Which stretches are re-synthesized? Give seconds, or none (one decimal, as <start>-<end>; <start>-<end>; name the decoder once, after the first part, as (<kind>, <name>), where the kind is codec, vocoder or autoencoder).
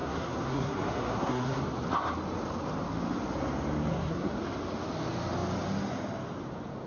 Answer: 0.0-1.6 (codec, SNAC); 3.9-4.4